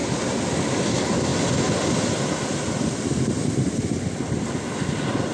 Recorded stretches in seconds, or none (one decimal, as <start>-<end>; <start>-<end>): 0.6-5.3